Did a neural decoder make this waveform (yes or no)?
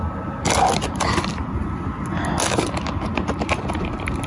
no